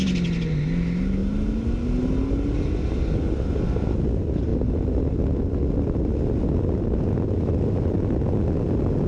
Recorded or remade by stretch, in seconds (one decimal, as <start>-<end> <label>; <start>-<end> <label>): 0.0-9.1 recorded